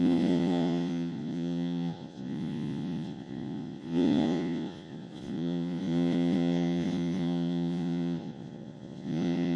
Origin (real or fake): fake